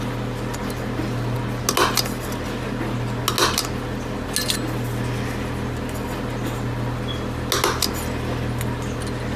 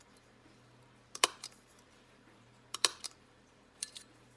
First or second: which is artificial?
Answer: second